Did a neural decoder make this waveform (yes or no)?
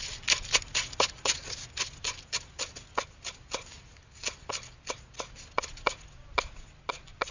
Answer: no